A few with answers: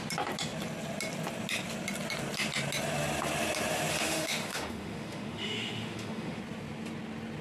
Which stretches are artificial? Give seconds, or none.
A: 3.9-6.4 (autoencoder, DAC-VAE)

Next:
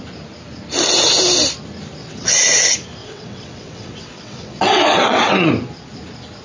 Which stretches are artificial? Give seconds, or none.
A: 2.0-2.6 (vocoder, WaveNeXt); 3.0-5.5

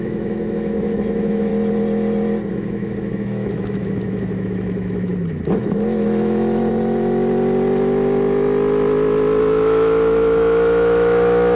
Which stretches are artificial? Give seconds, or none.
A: 0.0-1.5 (autoencoder, DAC-VAE); 2.5-5.1; 5.6-6.6; 9.4-11.6

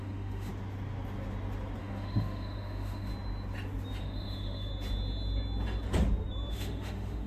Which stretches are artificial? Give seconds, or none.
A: 0.0-0.5 (autoencoder, DAC-VAE); 1.8-3.1; 4.0-4.7; 6.5-7.3

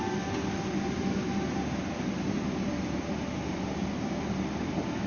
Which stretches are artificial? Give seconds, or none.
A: none

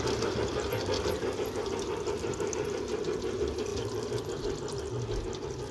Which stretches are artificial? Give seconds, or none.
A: none

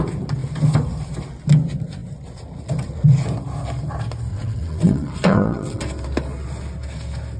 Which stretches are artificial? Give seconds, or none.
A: 4.3-5.8 (vocoder, WaveNeXt)